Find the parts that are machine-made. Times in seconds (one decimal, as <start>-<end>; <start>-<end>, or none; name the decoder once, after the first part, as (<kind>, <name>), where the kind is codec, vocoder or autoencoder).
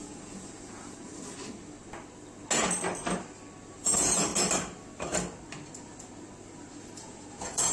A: 0.0-1.1 (vocoder, Vocos); 3.7-4.3; 7.0-7.7